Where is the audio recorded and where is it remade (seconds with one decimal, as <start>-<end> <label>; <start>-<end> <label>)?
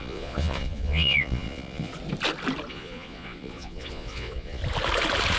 0.0-1.9 remade; 1.9-2.7 recorded; 2.7-4.6 remade; 4.6-5.4 recorded